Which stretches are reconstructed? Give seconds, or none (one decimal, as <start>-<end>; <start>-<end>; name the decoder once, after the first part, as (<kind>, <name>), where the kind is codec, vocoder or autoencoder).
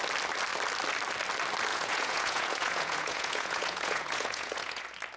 1.7-4.8 (vocoder, Vocos)